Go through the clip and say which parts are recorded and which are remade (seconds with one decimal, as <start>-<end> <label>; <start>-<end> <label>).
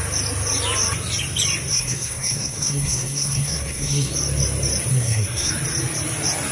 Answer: 0.0-1.7 recorded; 1.7-4.1 remade; 4.1-4.9 recorded; 4.9-5.5 remade; 5.5-6.5 recorded